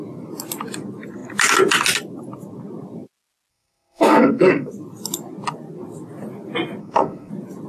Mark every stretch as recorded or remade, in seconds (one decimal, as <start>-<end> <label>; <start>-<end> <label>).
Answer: 0.0-3.5 recorded; 3.5-4.7 remade; 4.7-6.8 recorded; 6.8-7.3 remade; 7.3-7.7 recorded